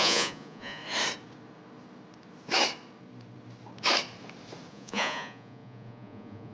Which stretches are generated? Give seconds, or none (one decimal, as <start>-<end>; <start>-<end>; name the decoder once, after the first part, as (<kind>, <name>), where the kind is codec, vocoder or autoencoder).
0.0-0.8 (vocoder, Vocos); 4.7-6.5